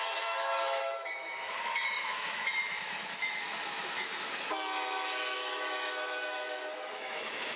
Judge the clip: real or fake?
fake